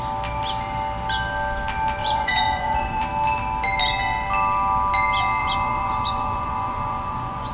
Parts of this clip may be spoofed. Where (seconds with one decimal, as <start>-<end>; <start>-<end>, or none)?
2.0-3.0; 5.4-7.5